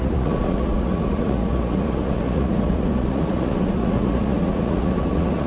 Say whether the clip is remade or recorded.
remade